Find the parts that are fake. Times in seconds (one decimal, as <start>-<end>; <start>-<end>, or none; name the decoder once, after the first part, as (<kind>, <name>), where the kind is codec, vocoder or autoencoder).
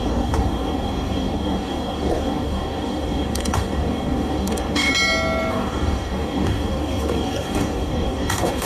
0.0-4.9 (codec, DAC); 5.5-8.7